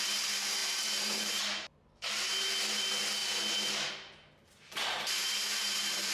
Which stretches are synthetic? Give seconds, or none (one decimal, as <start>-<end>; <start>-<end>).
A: 0.6-1.4; 5.2-6.1